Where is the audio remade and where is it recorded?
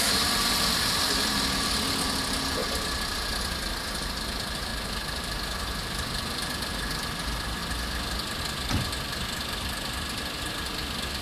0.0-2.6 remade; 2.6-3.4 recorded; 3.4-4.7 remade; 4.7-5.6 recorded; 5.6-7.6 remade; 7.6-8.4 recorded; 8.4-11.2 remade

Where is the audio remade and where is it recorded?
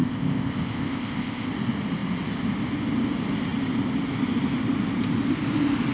0.0-1.5 remade; 1.5-5.9 recorded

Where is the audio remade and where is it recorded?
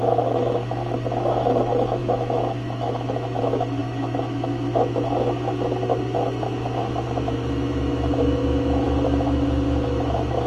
0.0-10.5 remade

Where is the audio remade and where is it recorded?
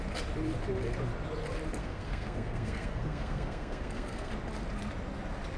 0.0-1.8 recorded; 1.8-4.3 remade; 4.3-5.6 recorded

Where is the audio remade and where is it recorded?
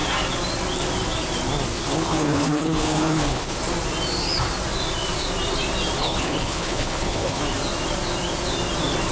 0.0-1.9 recorded; 1.9-3.5 remade; 3.5-6.0 recorded; 6.0-7.4 remade; 7.4-9.1 recorded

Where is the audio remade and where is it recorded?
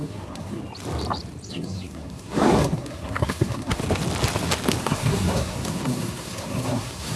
0.0-0.6 remade; 0.6-1.5 recorded; 1.5-3.8 remade; 3.8-4.8 recorded; 4.8-7.2 remade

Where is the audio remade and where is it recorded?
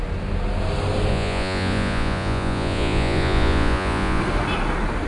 0.0-1.1 recorded; 1.1-4.2 remade; 4.2-5.1 recorded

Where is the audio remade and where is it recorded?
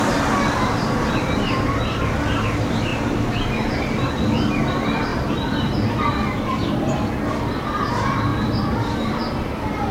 0.0-5.1 recorded; 5.1-5.9 remade; 5.9-9.9 recorded